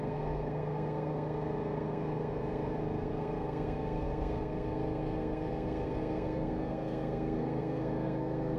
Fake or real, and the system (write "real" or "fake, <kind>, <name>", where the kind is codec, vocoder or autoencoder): fake, codec, SNAC